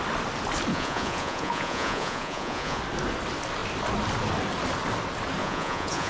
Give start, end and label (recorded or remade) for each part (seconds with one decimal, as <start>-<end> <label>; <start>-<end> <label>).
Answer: 0.0-0.7 recorded; 0.7-2.8 remade; 2.8-5.4 recorded; 5.4-6.1 remade